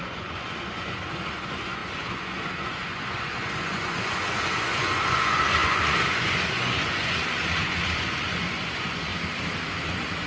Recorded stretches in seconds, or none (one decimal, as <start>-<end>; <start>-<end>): 9.1-9.9